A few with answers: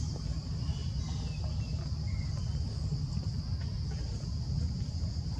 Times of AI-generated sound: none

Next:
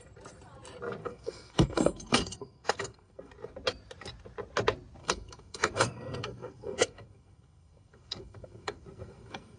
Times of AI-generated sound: 1.0-3.3 (codec, SNAC); 5.0-9.6